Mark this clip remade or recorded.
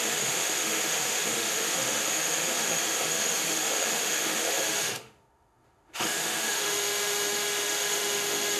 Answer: remade